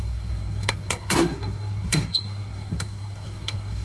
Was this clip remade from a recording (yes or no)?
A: yes